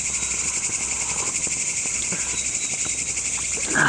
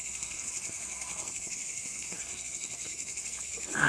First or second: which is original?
first